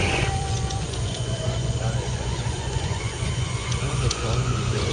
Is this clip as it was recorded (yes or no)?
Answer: no